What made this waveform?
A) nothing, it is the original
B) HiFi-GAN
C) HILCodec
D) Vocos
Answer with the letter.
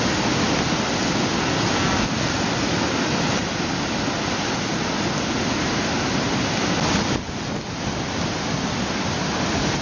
A